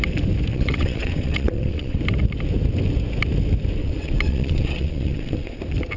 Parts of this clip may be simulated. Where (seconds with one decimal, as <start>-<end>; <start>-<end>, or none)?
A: 0.5-2.0; 3.8-5.6